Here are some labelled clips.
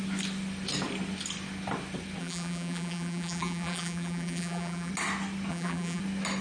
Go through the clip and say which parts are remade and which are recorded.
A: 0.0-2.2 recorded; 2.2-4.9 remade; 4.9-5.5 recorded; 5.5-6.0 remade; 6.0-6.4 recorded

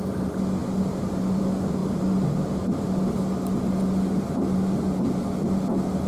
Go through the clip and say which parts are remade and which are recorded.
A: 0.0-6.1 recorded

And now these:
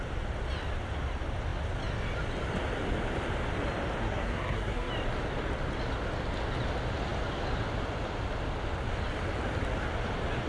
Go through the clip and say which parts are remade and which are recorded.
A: 0.0-4.0 recorded; 4.0-4.9 remade; 4.9-10.5 recorded

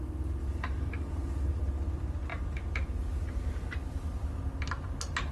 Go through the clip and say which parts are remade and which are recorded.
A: 0.0-0.4 recorded; 0.4-1.6 remade; 1.6-2.3 recorded; 2.3-2.9 remade; 2.9-5.3 recorded

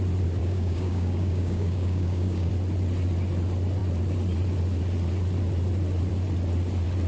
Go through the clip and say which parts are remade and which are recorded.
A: 0.0-0.4 recorded; 0.4-2.5 remade; 2.5-7.1 recorded

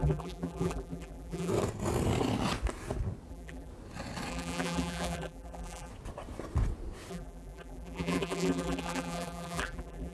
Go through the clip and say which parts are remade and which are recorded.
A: 0.0-1.5 remade; 1.5-3.3 recorded; 3.3-3.7 remade; 3.7-4.3 recorded; 4.3-5.9 remade; 5.9-7.1 recorded; 7.1-10.1 remade

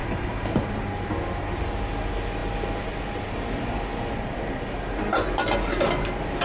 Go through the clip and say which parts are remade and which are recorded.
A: 0.0-1.7 remade; 1.7-6.4 recorded

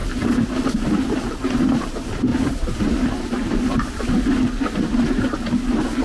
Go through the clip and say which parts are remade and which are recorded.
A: 0.0-6.0 recorded